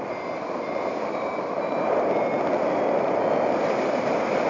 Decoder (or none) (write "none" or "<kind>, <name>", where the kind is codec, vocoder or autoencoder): none